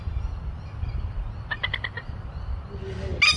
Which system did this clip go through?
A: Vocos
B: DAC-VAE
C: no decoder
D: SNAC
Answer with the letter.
C